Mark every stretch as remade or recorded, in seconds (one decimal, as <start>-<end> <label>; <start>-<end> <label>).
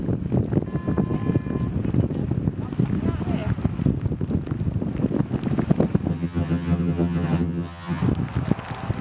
0.0-6.1 recorded; 6.1-8.0 remade; 8.0-9.0 recorded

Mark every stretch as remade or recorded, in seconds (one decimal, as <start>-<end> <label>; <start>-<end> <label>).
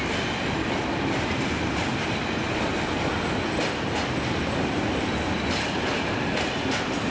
0.0-7.1 recorded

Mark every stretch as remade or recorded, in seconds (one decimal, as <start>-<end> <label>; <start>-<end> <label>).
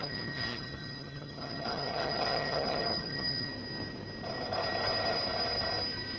0.0-3.5 remade; 3.5-6.2 recorded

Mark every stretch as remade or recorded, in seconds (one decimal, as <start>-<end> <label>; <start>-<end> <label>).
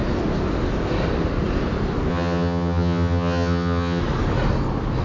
0.0-2.1 recorded; 2.1-4.0 remade; 4.0-5.0 recorded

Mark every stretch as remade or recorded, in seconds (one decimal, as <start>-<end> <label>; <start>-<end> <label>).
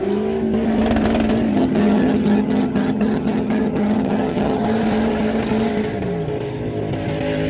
0.0-1.5 recorded; 1.5-4.6 remade; 4.6-7.5 recorded